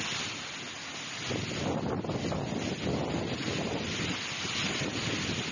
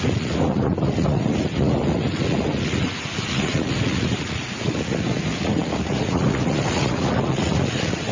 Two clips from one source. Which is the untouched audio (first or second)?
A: first